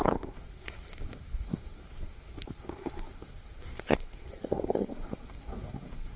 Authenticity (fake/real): fake